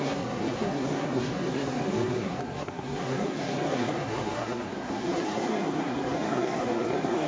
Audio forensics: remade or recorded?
remade